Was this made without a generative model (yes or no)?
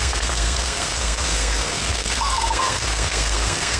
no